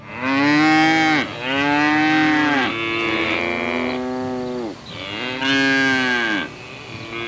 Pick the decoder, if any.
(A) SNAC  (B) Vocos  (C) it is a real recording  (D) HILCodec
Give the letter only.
C